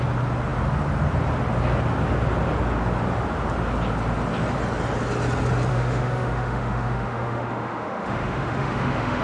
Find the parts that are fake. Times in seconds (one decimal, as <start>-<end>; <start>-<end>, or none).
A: 5.7-9.2